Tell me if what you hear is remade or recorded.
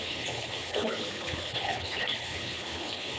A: remade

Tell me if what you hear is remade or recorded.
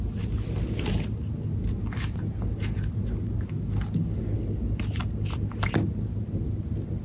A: recorded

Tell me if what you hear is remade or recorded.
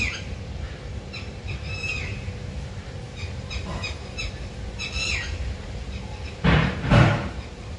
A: remade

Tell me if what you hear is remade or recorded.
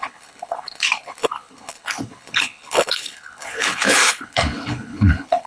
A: remade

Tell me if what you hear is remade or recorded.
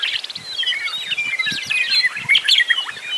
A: recorded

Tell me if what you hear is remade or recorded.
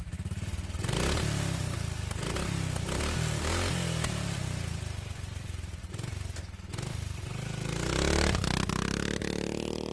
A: recorded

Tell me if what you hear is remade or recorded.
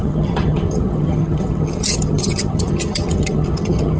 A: remade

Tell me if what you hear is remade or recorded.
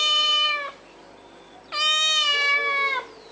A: recorded